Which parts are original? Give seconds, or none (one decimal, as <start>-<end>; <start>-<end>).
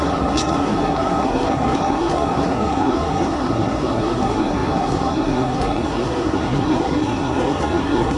none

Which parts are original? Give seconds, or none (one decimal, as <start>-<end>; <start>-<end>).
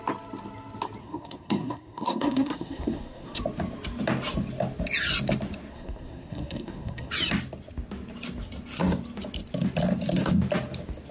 0.0-1.0; 3.4-5.7; 7.1-11.1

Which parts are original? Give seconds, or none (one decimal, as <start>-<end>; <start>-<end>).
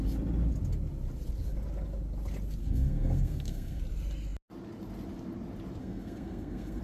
0.0-2.6; 3.8-5.8